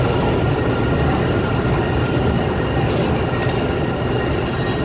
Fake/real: real